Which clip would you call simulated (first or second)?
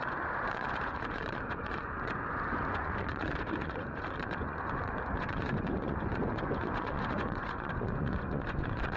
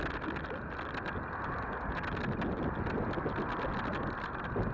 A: first